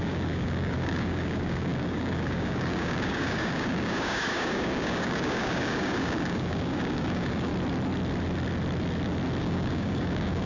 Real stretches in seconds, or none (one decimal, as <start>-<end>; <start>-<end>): 7.5-9.4